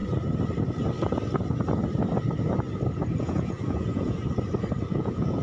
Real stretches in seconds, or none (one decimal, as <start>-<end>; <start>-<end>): 0.0-3.2; 4.2-5.0